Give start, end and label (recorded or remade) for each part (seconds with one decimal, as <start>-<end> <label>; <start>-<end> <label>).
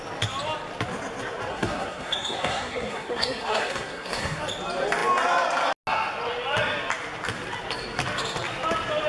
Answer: 0.0-1.5 recorded; 1.5-4.4 remade; 4.4-9.1 recorded